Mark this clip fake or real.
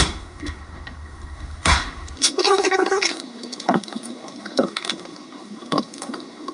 fake